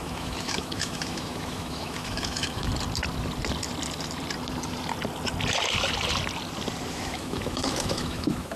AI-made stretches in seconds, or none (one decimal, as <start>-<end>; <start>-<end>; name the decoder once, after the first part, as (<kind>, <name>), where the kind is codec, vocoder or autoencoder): 0.0-2.7 (autoencoder, DAC-VAE); 6.9-8.6